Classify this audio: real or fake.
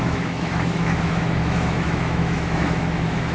fake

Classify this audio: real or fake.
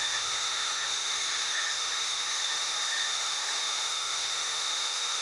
fake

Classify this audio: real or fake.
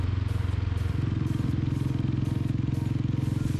real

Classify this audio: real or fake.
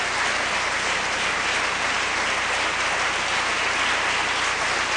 real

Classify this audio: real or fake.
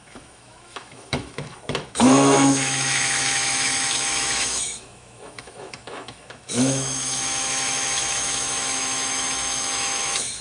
fake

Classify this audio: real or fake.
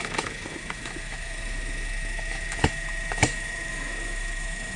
fake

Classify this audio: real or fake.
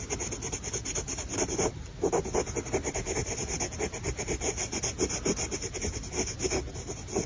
real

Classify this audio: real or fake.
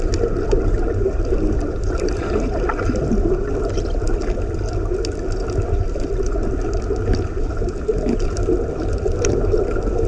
real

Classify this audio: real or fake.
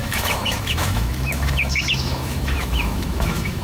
fake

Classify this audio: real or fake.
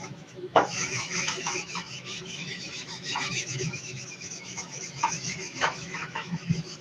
fake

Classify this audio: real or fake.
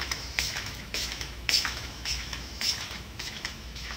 fake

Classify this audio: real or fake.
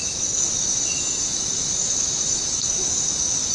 fake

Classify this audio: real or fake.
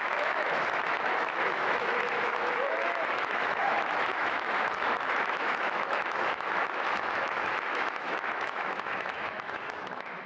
fake